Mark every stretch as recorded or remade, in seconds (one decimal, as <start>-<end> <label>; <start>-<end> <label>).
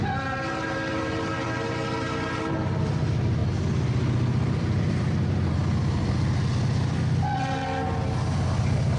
0.0-3.4 remade; 3.4-4.6 recorded; 4.6-5.6 remade; 5.6-8.6 recorded; 8.6-9.0 remade